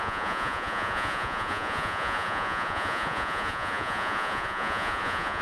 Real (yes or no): no